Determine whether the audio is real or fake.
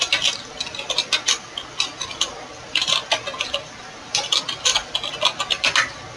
real